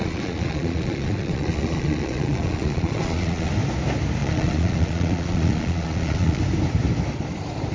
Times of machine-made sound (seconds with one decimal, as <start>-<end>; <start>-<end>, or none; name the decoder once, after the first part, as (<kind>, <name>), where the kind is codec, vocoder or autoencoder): 0.0-3.5 (vocoder, Vocos); 4.2-6.4